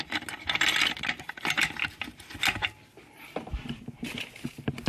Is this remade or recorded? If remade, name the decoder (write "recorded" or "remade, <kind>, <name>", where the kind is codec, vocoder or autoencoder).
recorded